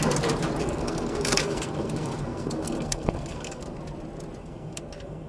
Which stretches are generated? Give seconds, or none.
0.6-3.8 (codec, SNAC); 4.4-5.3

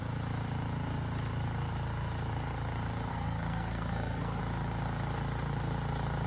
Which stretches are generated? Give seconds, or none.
3.1-4.4 (codec, SNAC)